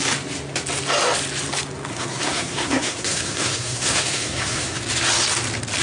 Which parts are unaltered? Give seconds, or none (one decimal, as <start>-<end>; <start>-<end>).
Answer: 0.0-1.9; 4.8-5.8